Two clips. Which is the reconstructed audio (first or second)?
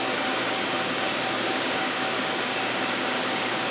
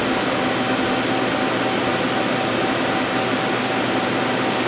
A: first